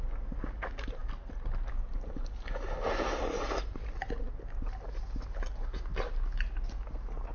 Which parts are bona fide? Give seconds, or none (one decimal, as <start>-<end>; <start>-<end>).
0.0-7.3